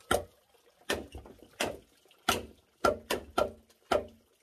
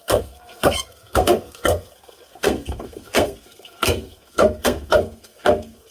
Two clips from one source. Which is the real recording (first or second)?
first